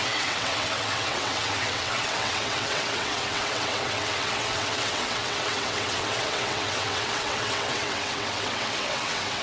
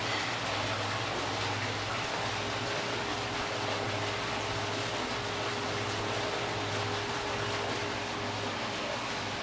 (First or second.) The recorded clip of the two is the second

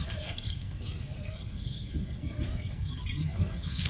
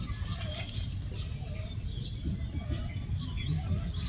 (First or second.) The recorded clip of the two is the second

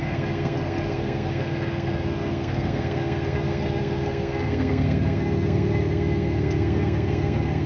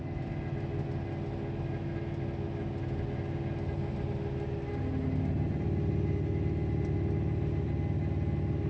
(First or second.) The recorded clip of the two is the second